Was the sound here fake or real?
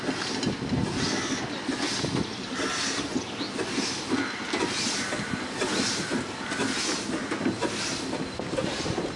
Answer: real